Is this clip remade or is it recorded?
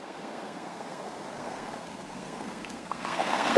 remade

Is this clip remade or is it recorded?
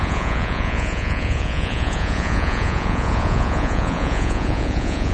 remade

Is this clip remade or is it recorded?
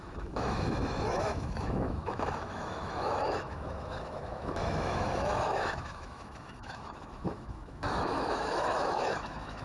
remade